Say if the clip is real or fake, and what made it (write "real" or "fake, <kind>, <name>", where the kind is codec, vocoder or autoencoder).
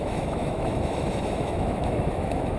fake, autoencoder, DAC-VAE